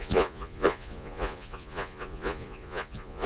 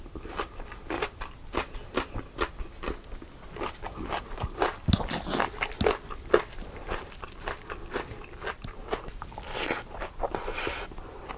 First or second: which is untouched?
second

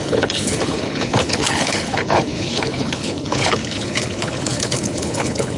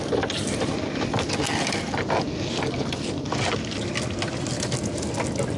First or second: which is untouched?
second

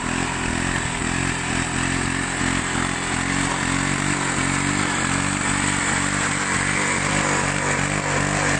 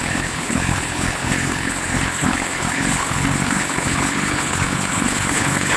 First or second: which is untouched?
first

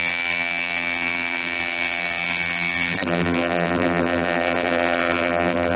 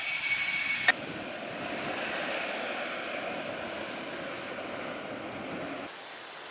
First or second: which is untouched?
second